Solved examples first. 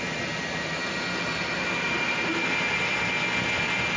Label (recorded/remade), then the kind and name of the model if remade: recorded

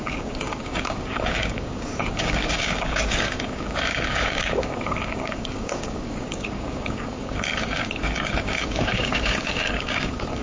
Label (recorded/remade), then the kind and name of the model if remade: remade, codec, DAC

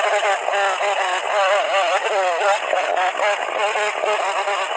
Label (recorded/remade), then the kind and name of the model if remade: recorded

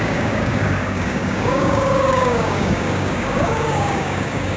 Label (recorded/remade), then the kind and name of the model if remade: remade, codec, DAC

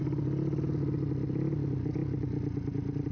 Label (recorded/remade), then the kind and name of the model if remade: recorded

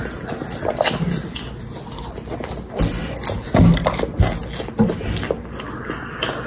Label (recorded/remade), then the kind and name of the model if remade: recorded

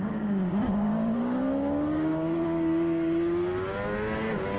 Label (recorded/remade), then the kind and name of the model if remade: remade, codec, DAC